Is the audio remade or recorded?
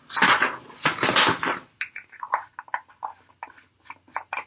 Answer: recorded